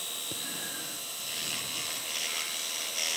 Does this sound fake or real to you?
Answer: real